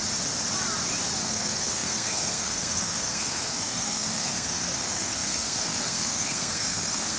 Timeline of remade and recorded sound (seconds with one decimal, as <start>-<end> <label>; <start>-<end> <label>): 0.0-1.2 recorded; 1.2-7.2 remade